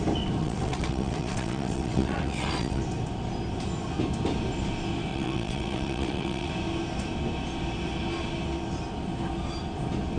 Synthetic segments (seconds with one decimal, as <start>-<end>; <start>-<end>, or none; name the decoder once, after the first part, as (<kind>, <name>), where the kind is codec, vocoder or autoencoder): 0.4-2.8 (vocoder, WaveNeXt); 5.1-6.5